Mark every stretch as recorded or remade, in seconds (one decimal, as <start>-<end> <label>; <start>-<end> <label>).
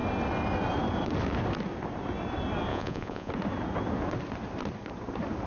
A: 0.0-2.7 recorded; 2.7-3.3 remade; 3.3-5.5 recorded